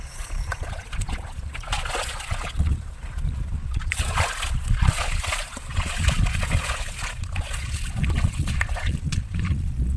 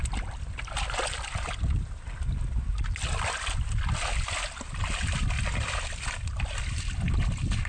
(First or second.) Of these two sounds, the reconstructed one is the first